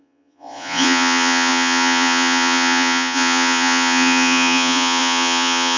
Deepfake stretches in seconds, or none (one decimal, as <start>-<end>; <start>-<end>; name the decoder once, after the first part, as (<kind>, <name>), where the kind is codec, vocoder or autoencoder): 0.0-5.8 (vocoder, Vocos)